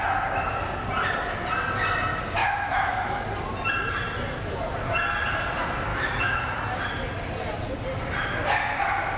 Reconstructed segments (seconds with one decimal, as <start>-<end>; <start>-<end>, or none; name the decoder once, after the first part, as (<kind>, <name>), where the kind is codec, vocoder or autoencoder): 2.4-3.2 (autoencoder, DAC-VAE); 5.9-6.6